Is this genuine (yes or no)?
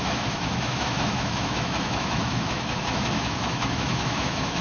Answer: no